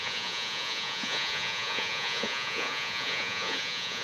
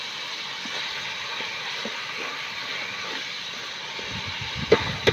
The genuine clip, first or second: second